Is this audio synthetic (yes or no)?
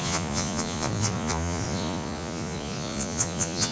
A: yes